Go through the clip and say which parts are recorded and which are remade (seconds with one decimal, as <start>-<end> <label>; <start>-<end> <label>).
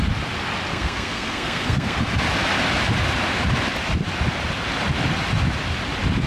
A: 0.0-0.7 recorded; 0.7-2.0 remade; 2.0-6.3 recorded